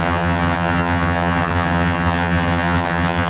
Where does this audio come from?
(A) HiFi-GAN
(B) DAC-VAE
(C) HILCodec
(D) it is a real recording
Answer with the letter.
A